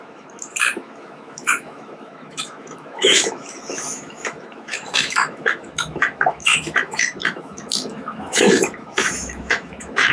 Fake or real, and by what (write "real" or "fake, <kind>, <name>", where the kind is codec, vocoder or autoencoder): fake, autoencoder, DAC-VAE